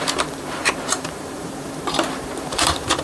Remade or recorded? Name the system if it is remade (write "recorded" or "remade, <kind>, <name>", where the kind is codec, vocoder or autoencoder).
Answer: remade, vocoder, BigVGAN v2